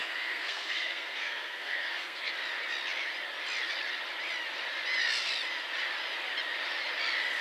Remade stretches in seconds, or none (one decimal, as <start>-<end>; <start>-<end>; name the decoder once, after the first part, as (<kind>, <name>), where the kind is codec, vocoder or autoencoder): 0.0-2.3 (codec, SNAC)